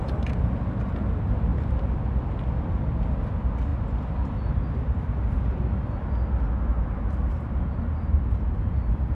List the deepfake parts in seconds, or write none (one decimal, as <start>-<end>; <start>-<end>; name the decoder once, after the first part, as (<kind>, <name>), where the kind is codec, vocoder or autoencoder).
6.7-8.3 (vocoder, BigVGAN v2)